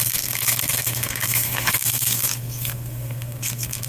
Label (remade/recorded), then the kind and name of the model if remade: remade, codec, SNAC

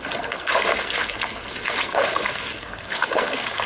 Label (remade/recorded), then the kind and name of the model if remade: remade, codec, SNAC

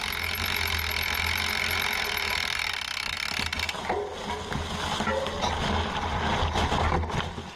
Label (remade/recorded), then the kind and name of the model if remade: recorded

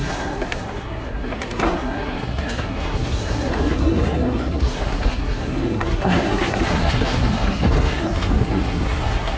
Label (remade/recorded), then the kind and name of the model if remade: remade, codec, SNAC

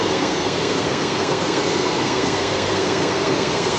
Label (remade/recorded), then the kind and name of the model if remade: remade, codec, SNAC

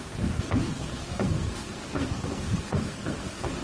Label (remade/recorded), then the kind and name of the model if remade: remade, codec, SNAC